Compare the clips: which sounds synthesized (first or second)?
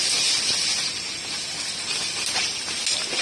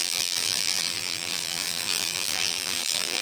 second